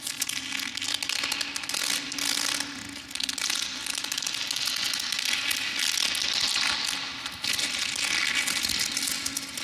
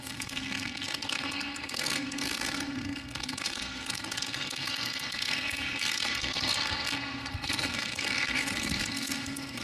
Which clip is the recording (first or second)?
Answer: first